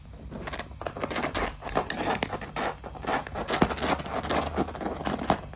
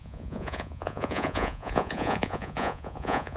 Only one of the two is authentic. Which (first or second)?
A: first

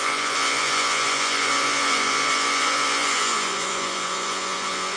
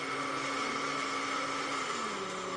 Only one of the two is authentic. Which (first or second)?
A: second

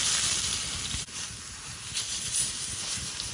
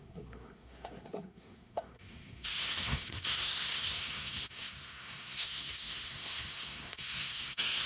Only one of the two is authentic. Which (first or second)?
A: first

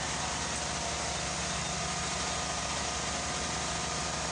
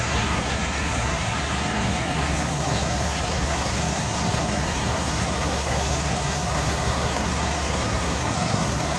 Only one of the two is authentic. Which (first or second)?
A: first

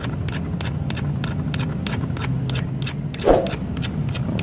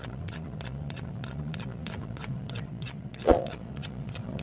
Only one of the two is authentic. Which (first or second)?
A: first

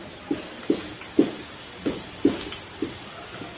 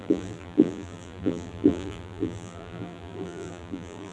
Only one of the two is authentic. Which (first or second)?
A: first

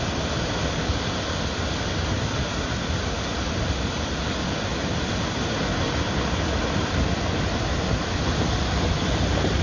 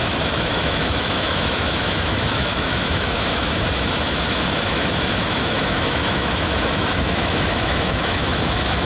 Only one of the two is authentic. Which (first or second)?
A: first